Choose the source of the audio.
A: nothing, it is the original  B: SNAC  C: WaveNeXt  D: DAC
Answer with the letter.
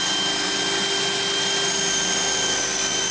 A